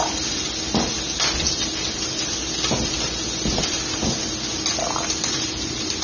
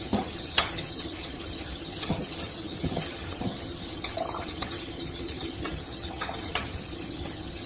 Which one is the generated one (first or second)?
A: second